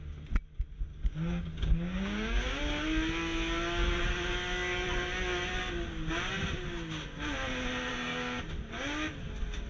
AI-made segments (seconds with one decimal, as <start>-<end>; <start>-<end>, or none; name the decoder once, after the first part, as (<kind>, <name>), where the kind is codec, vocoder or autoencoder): 0.9-2.6 (codec, DAC); 7.9-8.4